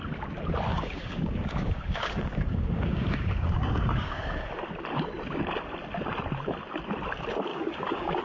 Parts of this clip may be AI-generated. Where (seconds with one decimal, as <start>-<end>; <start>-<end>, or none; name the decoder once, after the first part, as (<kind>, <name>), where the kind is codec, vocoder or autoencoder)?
0.7-4.5 (codec, DAC); 7.5-8.2